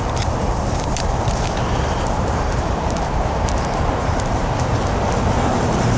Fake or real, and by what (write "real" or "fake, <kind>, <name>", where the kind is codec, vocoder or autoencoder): fake, vocoder, BigVGAN v2